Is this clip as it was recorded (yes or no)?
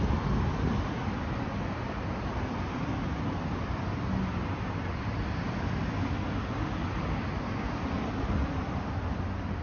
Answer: yes